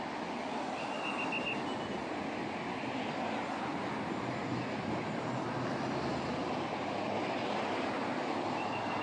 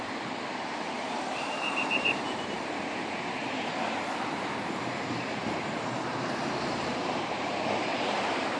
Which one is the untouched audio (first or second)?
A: first